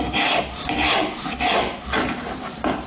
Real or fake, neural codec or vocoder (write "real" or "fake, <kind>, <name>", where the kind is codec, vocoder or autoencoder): real